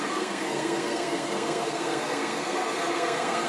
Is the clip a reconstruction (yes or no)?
yes